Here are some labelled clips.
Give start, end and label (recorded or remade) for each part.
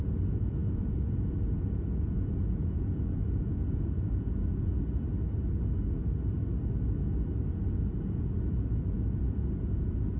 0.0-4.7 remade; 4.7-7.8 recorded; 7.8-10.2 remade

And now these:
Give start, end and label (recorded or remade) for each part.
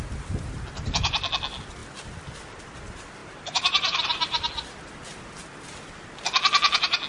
0.0-3.2 recorded; 3.2-4.4 remade; 4.4-7.1 recorded